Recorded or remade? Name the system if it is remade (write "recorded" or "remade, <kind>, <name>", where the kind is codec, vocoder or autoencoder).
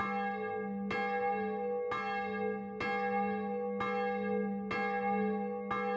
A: recorded